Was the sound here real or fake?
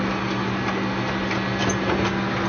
real